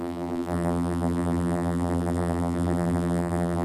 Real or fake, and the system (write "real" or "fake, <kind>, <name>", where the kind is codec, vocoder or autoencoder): fake, vocoder, BigVGAN v2